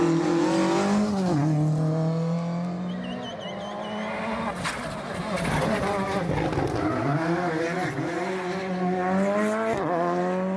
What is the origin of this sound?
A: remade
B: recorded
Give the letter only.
B